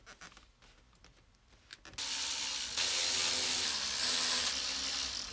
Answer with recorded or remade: recorded